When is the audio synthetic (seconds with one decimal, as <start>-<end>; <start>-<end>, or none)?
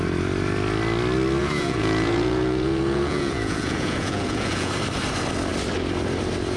1.4-4.7